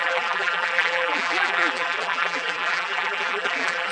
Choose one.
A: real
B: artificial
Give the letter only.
B